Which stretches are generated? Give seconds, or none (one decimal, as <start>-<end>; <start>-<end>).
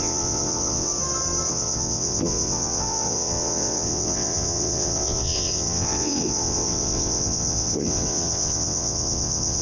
0.0-0.9; 1.5-9.6